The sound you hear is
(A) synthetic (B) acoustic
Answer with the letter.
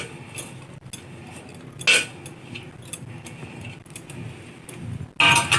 B